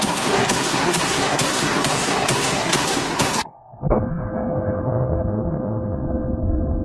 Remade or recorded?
remade